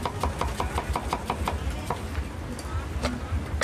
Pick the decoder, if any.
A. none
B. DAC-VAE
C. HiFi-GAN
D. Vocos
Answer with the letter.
A